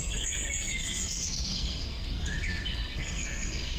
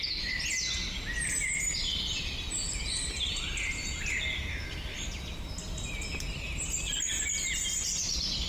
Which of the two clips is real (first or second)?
second